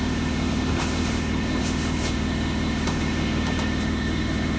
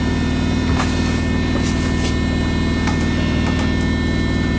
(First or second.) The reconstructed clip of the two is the first